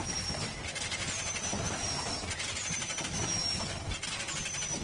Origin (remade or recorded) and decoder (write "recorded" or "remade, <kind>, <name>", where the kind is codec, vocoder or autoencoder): recorded